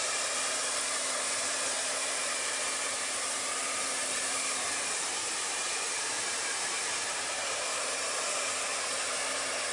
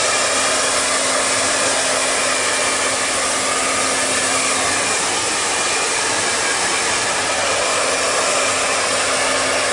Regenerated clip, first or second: first